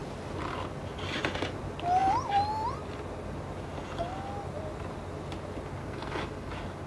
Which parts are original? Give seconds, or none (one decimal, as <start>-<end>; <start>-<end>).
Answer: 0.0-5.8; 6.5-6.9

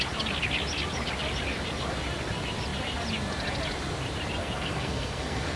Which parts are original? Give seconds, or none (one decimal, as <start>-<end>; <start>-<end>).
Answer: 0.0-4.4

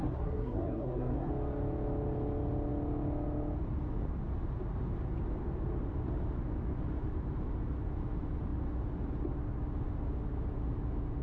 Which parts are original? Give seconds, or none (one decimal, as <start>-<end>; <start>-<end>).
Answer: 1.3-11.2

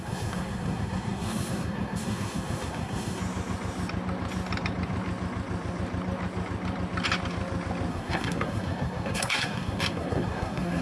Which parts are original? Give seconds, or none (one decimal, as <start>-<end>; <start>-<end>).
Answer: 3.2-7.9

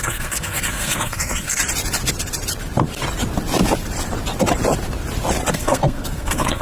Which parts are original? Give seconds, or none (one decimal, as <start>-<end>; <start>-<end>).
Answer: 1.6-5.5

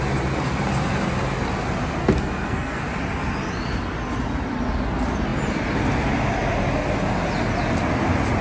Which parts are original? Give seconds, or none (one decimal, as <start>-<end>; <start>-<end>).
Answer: 0.0-2.0; 2.8-8.4

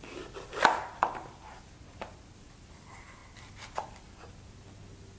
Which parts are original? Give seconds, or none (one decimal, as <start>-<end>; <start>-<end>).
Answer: 0.0-5.2

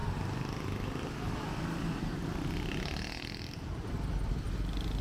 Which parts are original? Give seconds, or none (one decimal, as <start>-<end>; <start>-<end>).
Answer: 0.0-5.0